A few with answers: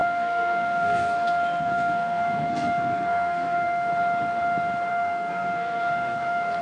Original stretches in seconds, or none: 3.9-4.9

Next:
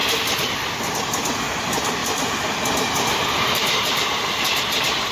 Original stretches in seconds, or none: 0.8-2.0; 4.6-5.1

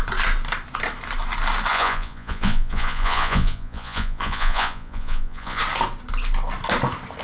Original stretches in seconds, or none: 0.0-1.7; 5.6-7.2